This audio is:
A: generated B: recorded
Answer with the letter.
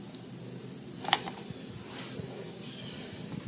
A